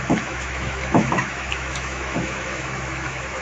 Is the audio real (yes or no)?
no